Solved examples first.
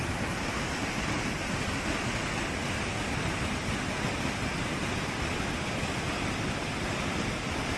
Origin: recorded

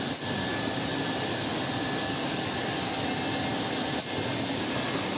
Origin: recorded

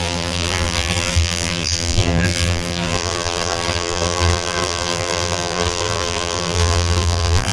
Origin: remade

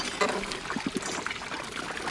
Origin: recorded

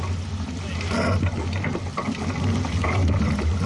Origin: recorded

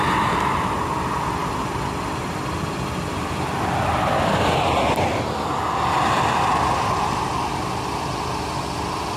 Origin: recorded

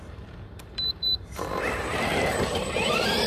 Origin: remade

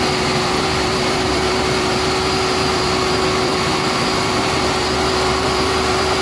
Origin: remade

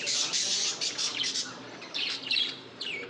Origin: remade